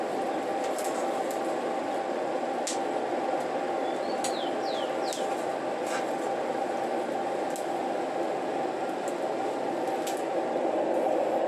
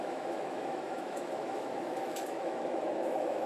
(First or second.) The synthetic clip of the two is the second